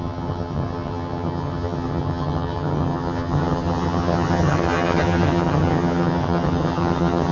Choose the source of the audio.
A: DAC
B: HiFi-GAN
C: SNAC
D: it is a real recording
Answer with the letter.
B